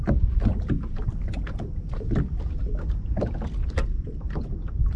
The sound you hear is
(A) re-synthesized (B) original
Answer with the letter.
B